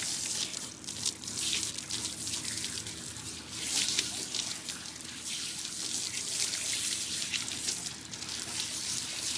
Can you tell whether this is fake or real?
real